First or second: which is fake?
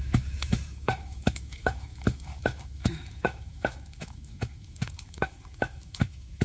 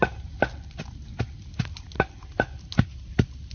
first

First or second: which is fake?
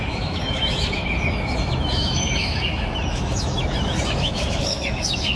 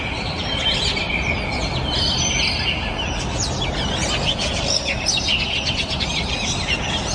first